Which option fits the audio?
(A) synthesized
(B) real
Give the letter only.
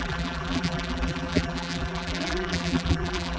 A